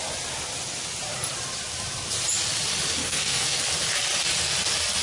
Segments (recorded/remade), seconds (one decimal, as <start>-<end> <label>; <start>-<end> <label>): 0.0-3.0 recorded; 3.0-3.6 remade; 3.6-5.0 recorded